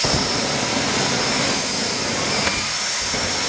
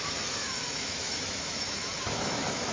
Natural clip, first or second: first